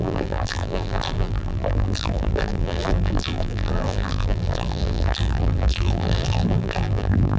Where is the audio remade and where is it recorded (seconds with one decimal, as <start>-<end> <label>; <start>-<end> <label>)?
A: 0.0-7.4 remade